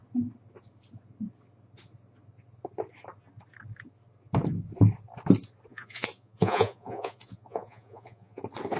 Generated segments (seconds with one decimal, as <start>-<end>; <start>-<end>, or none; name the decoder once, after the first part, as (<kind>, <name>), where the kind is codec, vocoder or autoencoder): 5.7-8.4 (vocoder, Vocos)